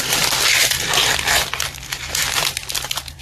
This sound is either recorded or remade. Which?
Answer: remade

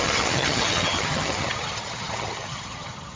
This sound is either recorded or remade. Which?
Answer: remade